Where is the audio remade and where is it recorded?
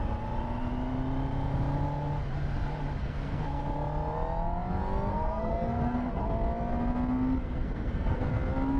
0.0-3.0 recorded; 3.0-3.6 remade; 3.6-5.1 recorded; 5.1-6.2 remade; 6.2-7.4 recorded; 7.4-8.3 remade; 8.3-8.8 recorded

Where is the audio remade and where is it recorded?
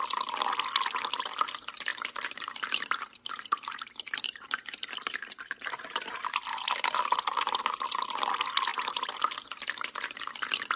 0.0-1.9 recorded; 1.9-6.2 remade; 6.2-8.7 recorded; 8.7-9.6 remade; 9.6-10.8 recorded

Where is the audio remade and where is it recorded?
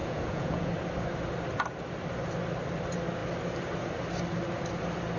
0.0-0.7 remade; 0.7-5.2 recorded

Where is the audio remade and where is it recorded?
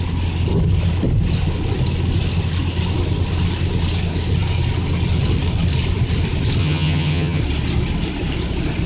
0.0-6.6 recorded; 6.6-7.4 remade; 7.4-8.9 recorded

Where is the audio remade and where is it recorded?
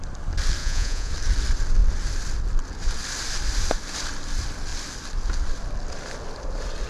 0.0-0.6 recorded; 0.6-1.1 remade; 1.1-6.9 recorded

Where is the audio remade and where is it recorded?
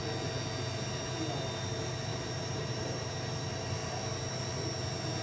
0.0-2.1 recorded; 2.1-3.1 remade; 3.1-5.2 recorded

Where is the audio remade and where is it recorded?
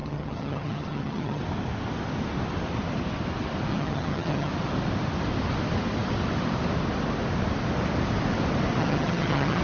0.0-1.4 remade; 1.4-3.7 recorded; 3.7-4.5 remade; 4.5-8.8 recorded; 8.8-9.6 remade